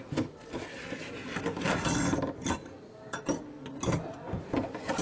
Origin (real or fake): real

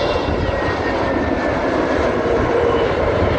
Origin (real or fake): fake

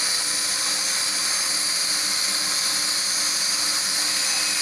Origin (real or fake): real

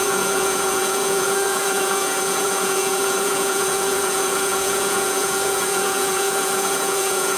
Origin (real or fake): fake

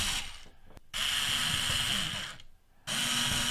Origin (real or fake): real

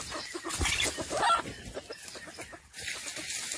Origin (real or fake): real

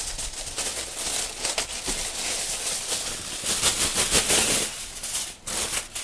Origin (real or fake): real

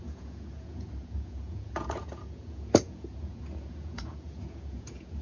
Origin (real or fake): fake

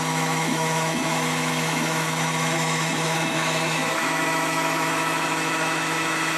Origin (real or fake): fake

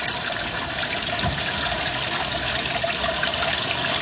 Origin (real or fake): fake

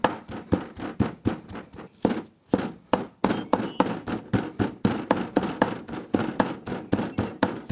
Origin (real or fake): real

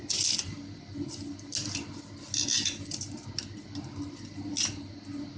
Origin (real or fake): real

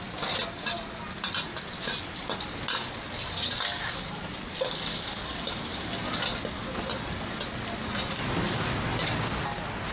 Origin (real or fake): real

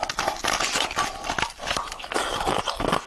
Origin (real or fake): real